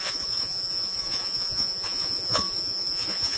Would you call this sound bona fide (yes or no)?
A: no